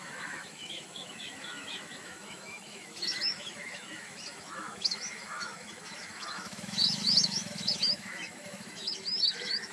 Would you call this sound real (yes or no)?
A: no